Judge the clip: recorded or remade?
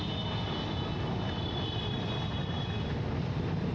recorded